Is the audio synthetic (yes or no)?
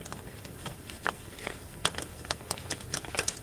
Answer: yes